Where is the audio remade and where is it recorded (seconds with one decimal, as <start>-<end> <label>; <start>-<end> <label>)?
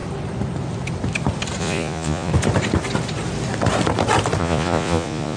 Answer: 0.0-1.6 recorded; 1.6-2.3 remade; 2.3-4.4 recorded; 4.4-5.4 remade